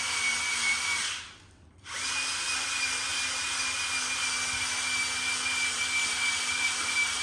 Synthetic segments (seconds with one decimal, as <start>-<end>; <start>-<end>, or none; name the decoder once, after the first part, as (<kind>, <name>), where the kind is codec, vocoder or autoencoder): none